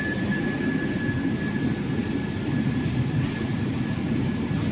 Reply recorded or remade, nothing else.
recorded